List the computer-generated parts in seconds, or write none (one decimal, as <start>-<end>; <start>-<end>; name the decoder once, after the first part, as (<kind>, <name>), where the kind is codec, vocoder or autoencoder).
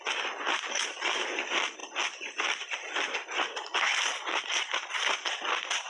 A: none